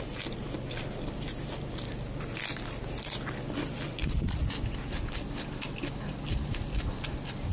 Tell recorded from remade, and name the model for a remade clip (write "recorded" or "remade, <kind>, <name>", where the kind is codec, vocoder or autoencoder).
recorded